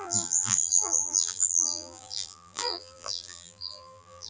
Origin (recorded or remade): remade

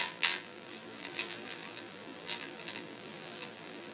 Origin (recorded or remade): remade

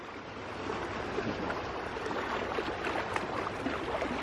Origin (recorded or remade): remade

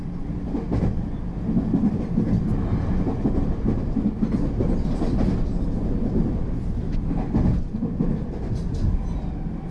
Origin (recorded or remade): recorded